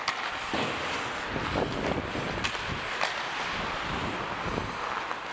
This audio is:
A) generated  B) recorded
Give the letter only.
B